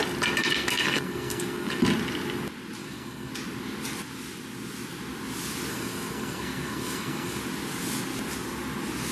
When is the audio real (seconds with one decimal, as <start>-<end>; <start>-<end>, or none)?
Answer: 0.0-0.4; 1.8-2.8; 3.3-5.7; 7.4-9.1